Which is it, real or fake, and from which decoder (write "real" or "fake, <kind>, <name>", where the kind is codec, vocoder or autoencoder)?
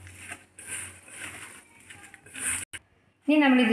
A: real